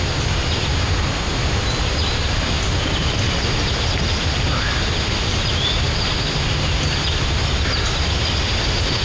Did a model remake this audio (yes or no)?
no